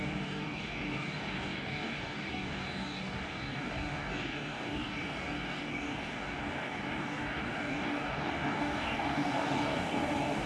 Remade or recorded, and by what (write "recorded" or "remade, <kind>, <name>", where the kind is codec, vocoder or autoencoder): remade, codec, DAC